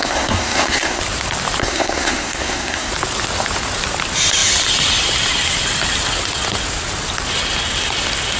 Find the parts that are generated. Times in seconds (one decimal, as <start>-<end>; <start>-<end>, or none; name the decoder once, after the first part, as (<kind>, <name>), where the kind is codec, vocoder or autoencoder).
0.0-1.0 (codec, SNAC); 1.6-2.9